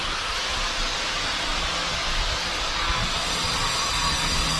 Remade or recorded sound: recorded